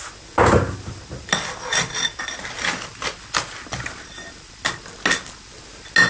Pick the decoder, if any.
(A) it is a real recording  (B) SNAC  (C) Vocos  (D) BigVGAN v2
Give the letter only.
A